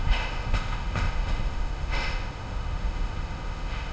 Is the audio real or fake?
fake